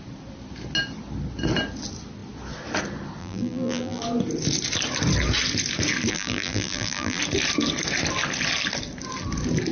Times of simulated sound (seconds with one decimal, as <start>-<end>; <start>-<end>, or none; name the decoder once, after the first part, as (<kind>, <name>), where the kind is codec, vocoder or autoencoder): 3.2-4.0 (vocoder, BigVGAN v2); 6.1-7.2